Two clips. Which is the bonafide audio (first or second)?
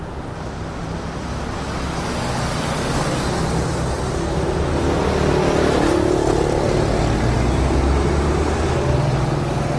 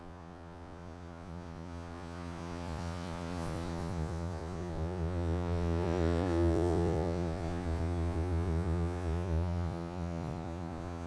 first